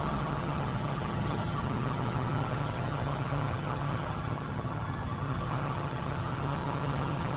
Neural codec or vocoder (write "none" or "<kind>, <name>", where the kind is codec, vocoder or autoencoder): vocoder, HiFi-GAN